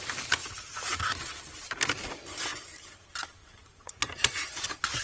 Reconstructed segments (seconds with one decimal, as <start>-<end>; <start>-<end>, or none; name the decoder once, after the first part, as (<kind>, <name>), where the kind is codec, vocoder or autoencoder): 3.4-4.3 (vocoder, Vocos)